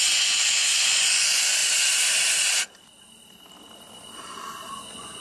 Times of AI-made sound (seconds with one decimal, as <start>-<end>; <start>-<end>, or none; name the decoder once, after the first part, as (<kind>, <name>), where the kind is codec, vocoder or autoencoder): 0.0-1.6 (vocoder, Vocos); 4.7-5.2